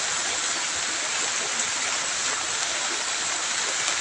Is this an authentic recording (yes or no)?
yes